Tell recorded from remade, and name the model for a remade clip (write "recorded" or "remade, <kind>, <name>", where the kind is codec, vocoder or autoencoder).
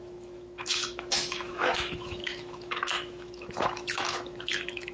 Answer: remade, autoencoder, DAC-VAE